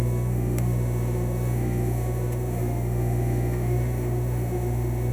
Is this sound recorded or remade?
remade